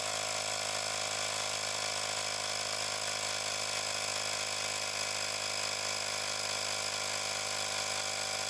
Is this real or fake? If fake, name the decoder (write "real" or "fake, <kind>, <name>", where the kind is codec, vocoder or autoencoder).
real